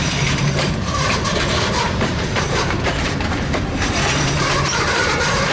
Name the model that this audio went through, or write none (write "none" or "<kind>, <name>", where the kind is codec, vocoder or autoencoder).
vocoder, BigVGAN v2